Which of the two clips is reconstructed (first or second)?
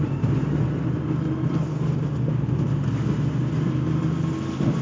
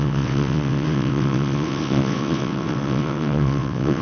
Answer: second